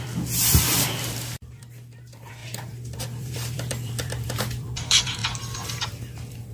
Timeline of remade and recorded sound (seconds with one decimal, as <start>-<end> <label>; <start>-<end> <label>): 0.0-6.5 remade